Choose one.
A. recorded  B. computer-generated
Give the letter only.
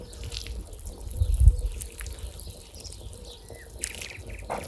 A